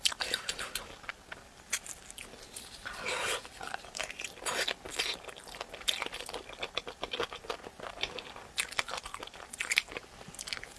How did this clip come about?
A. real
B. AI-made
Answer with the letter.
A